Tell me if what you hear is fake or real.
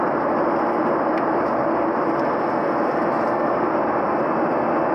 real